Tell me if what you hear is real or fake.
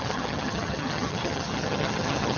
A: fake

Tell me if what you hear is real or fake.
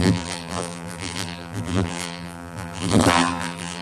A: fake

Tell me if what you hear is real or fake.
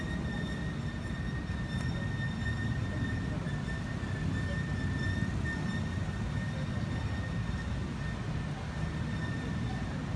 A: real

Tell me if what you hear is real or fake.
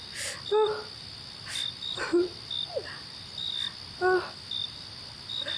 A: real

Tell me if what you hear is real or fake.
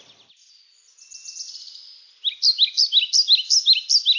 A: real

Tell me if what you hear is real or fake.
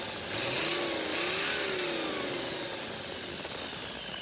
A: real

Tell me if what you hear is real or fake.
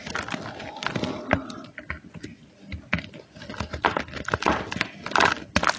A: real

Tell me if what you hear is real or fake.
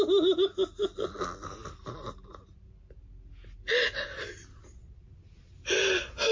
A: real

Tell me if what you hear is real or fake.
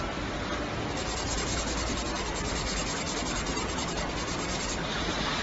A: real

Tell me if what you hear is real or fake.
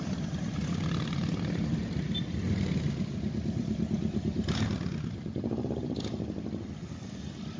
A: fake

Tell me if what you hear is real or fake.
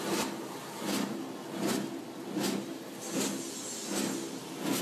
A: real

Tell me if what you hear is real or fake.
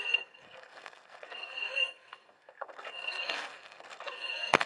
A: fake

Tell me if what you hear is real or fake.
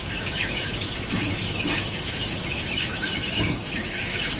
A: fake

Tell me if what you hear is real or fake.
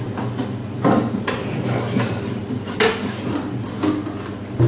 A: real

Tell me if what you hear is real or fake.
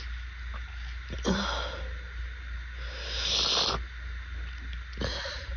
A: real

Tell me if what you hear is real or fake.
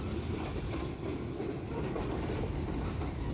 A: real